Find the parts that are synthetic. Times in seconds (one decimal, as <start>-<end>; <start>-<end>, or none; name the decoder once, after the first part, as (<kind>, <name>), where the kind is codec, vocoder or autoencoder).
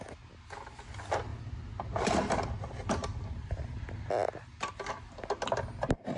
1.3-4.7 (vocoder, BigVGAN v2)